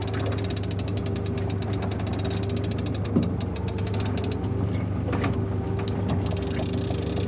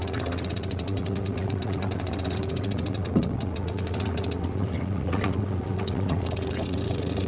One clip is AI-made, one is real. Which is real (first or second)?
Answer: first